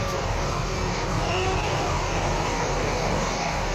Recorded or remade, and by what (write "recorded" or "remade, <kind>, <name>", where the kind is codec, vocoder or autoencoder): remade, codec, DAC